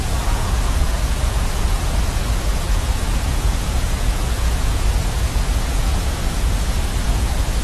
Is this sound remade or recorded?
remade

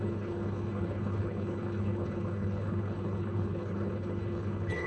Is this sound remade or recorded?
remade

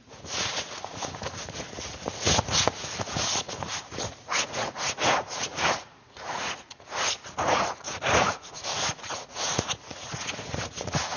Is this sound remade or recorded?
remade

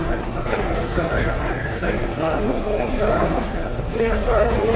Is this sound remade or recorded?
remade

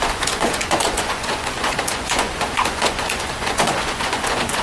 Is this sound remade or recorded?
remade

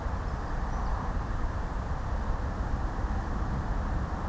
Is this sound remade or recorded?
recorded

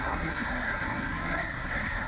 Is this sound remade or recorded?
remade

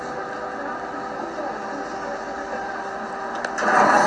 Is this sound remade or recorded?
recorded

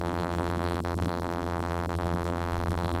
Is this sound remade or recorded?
remade